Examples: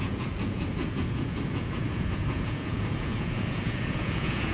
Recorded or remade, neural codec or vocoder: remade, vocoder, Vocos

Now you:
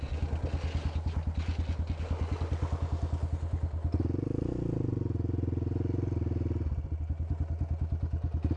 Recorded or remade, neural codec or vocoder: recorded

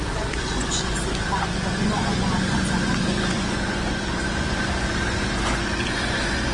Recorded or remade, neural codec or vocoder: remade, vocoder, Vocos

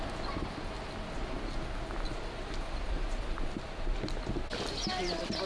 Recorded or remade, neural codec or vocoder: recorded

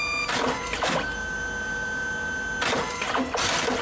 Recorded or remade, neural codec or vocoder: recorded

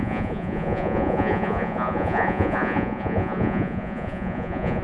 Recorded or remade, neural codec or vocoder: remade, vocoder, Vocos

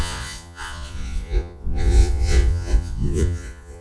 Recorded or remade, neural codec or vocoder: remade, vocoder, Vocos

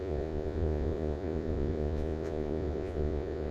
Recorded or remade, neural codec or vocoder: remade, vocoder, Vocos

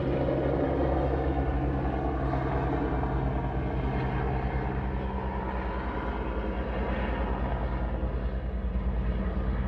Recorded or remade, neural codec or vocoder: recorded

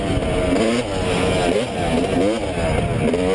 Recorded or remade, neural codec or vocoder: recorded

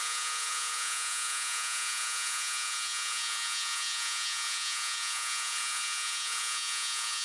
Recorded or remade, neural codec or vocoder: remade, vocoder, Vocos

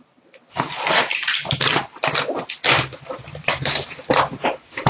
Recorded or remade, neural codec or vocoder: recorded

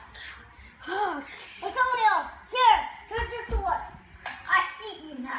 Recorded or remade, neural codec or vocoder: recorded